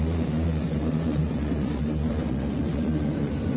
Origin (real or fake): fake